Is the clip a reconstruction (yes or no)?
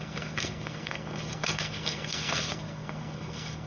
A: yes